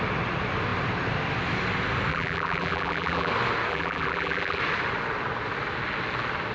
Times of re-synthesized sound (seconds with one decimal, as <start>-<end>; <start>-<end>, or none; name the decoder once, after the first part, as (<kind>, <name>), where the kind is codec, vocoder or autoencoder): 2.1-3.3 (vocoder, BigVGAN v2); 3.7-4.6